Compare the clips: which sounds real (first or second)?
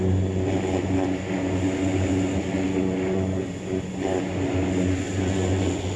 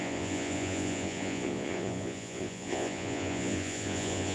first